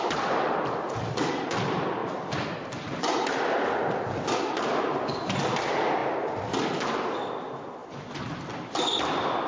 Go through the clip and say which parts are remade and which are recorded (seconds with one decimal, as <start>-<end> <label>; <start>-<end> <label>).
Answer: 0.0-2.0 recorded; 2.0-3.0 remade; 3.0-7.8 recorded; 7.8-9.5 remade